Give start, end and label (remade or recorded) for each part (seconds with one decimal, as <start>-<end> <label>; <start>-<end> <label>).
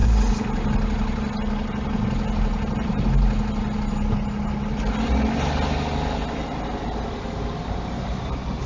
0.0-8.7 recorded